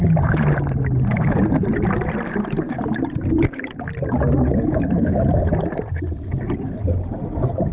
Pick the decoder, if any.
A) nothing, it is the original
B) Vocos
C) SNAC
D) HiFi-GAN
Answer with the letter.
A